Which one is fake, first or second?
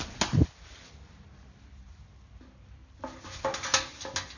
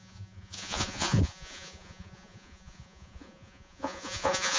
second